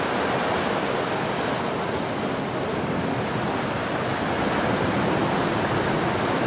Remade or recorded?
recorded